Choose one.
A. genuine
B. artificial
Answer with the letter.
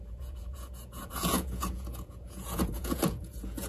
B